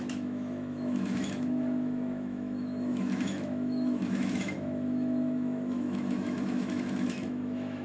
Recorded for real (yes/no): no